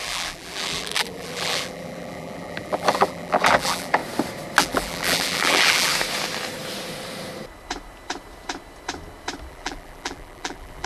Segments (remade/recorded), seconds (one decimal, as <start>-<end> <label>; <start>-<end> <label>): 0.0-4.0 remade; 4.0-4.6 recorded; 4.6-5.9 remade; 5.9-9.5 recorded; 9.5-10.9 remade